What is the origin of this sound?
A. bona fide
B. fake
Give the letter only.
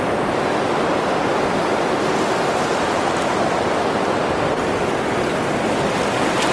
A